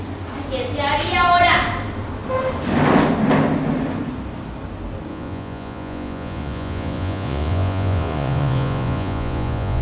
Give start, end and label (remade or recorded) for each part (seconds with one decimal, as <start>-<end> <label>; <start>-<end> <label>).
0.0-5.1 recorded; 5.1-9.8 remade